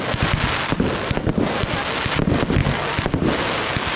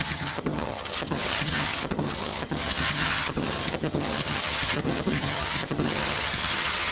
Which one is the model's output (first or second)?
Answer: second